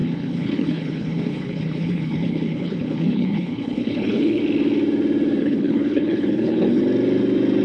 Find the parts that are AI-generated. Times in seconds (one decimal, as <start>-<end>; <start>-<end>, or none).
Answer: 0.0-4.4; 5.4-6.8